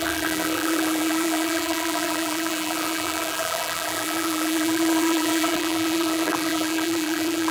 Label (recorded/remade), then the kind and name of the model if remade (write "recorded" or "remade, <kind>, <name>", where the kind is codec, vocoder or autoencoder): remade, vocoder, BigVGAN v2